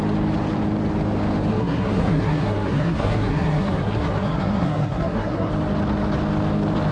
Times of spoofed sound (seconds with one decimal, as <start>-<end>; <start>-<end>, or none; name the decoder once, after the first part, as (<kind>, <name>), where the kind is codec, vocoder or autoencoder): 1.5-5.5 (codec, SNAC)